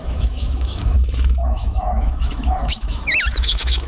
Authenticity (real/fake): fake